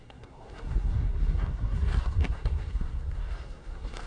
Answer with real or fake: fake